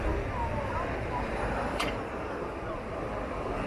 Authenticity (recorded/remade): recorded